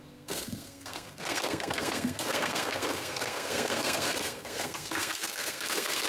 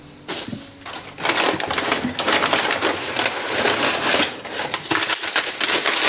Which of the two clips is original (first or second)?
second